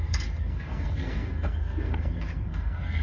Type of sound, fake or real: fake